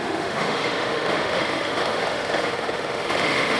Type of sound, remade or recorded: remade